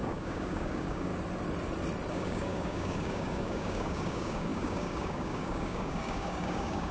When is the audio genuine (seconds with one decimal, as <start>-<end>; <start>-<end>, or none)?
1.1-2.1